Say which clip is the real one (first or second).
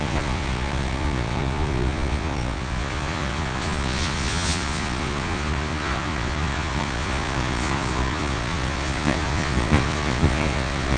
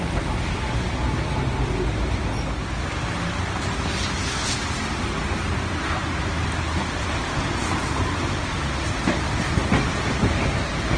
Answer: second